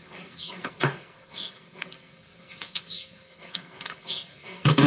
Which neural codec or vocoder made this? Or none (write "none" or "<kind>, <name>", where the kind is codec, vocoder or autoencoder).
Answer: codec, SNAC